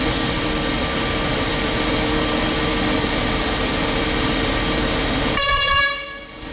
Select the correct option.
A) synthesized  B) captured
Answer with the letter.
A